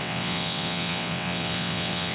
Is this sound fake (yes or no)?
yes